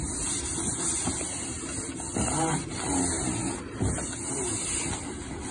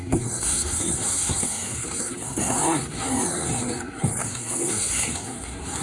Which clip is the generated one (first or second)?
second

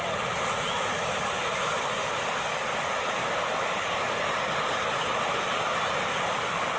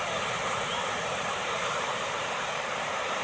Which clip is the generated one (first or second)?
second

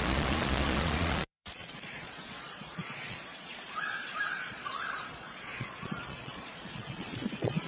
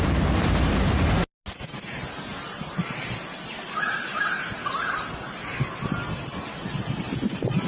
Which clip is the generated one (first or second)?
first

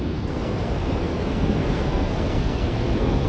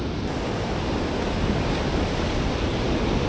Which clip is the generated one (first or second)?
first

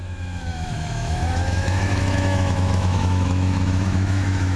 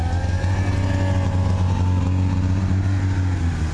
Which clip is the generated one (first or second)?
first